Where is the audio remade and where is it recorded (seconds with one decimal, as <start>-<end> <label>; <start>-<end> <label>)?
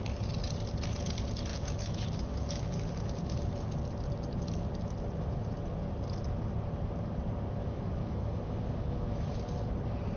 0.0-1.5 recorded; 1.5-3.5 remade; 3.5-7.6 recorded; 7.6-9.4 remade; 9.4-10.2 recorded